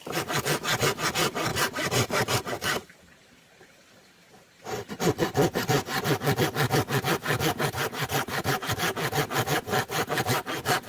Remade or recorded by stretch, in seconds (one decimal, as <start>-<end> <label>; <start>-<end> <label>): 0.0-1.5 recorded; 1.5-4.9 remade; 4.9-7.8 recorded; 7.8-8.7 remade; 8.7-10.9 recorded